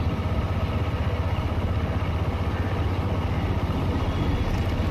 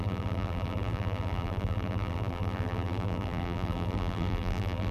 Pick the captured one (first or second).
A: first